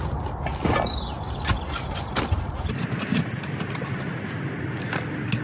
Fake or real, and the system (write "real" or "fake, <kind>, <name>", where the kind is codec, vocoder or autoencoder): real